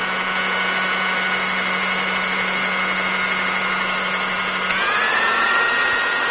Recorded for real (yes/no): no